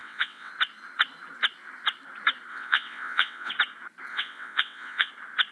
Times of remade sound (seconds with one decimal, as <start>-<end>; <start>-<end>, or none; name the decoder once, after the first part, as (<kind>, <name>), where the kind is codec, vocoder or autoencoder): 0.0-0.5 (vocoder, WaveNeXt); 2.5-3.5; 4.1-5.1